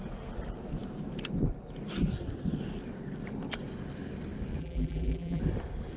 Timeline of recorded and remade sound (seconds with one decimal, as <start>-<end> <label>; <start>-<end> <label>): 0.0-4.6 recorded; 4.6-5.4 remade; 5.4-6.0 recorded